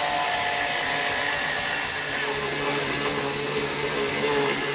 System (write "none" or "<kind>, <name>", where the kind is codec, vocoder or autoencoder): none